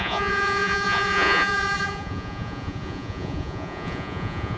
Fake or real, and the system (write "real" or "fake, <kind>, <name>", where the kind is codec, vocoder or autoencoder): fake, vocoder, Vocos